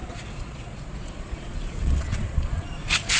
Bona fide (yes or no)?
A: no